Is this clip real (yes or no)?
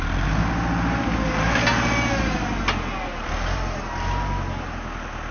yes